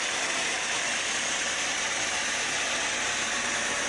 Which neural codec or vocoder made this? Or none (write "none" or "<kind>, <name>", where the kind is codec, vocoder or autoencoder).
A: none